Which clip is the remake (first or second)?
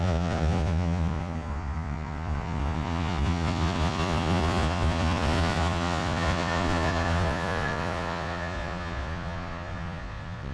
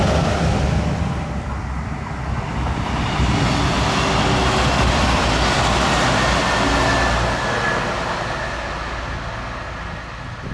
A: first